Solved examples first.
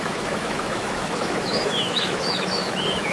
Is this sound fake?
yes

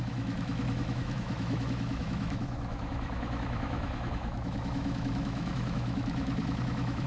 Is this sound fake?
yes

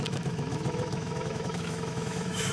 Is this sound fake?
yes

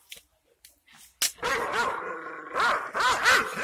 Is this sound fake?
no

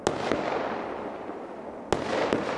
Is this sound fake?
no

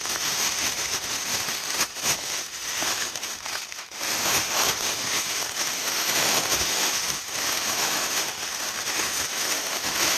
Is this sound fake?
yes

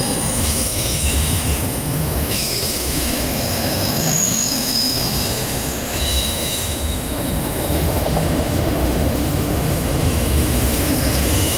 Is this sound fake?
yes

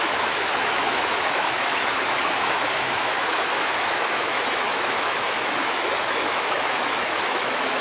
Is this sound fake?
yes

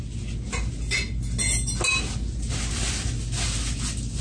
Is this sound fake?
no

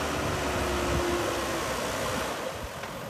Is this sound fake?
no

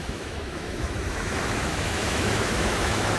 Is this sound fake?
yes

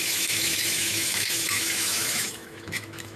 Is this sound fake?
yes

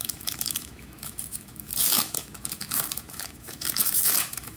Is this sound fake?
yes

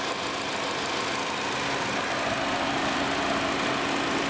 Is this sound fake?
no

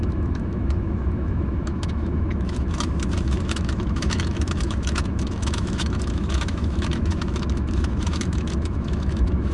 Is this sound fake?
yes